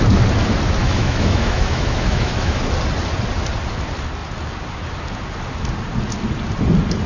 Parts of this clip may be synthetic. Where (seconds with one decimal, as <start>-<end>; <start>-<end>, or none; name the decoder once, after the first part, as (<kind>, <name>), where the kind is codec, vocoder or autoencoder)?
0.8-2.6 (autoencoder, DAC-VAE)